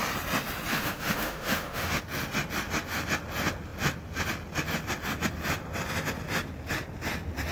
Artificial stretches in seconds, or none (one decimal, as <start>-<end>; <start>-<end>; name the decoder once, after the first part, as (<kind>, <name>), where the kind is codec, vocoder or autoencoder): 0.7-2.0 (autoencoder, DAC-VAE)